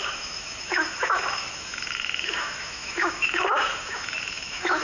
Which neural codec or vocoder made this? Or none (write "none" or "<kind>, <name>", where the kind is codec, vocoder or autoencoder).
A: autoencoder, DAC-VAE